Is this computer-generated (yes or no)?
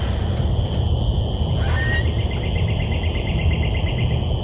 no